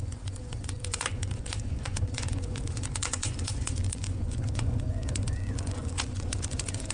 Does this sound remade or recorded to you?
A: remade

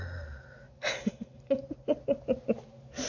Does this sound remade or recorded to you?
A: recorded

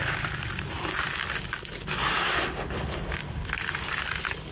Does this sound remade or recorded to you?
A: recorded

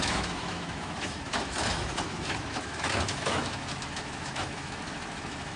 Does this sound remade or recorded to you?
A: remade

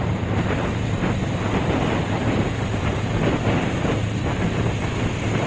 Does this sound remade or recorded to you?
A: remade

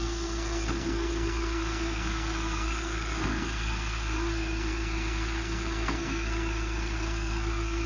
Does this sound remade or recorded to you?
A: remade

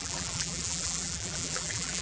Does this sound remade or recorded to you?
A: remade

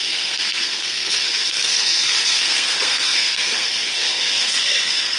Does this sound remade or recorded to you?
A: remade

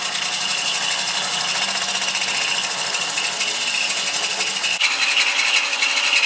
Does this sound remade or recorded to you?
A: recorded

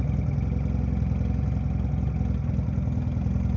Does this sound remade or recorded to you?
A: recorded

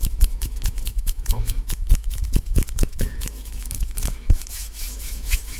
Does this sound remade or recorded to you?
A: remade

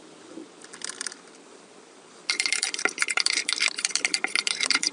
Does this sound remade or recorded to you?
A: remade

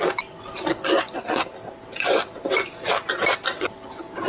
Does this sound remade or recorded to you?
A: recorded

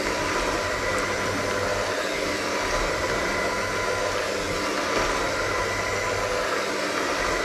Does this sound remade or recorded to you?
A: recorded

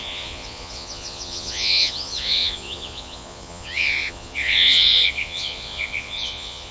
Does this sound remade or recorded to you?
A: remade